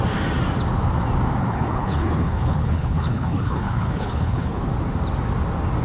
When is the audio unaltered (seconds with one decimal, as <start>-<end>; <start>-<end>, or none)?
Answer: 0.0-1.4; 4.6-5.8